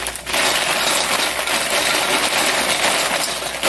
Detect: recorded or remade recorded